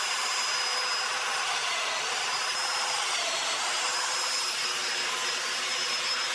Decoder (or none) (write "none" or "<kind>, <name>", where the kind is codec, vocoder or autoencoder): none